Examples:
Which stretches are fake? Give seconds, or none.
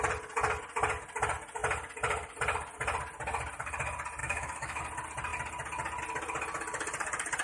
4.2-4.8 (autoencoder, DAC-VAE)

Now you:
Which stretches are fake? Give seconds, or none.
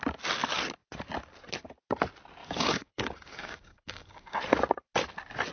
2.4-4.4 (codec, DAC)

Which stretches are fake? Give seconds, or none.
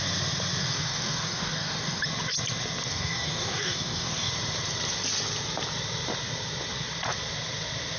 0.6-2.0 (codec, DAC); 2.9-4.3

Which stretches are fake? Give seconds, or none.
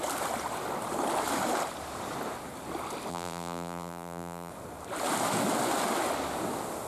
3.1-4.5 (vocoder, BigVGAN v2)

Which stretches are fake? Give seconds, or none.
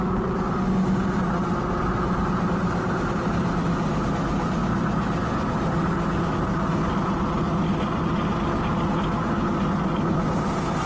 none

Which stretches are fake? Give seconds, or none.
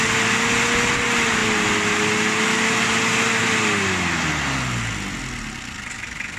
none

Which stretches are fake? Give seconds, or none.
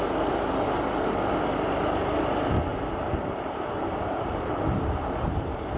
2.7-5.8 (vocoder, BigVGAN v2)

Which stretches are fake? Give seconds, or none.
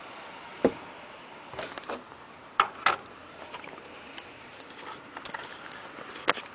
0.5-1.9 (vocoder, BigVGAN v2); 2.4-4.6